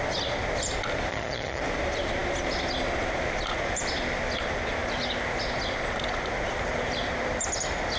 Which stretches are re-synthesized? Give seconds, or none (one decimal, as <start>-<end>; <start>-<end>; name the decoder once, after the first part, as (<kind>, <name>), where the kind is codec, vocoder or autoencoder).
1.1-1.6 (vocoder, HiFi-GAN)